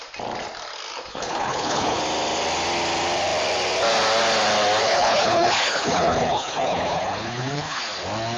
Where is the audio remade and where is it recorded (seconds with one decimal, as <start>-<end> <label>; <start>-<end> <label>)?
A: 0.0-1.1 recorded; 1.1-2.0 remade; 2.0-4.8 recorded; 4.8-7.8 remade; 7.8-8.4 recorded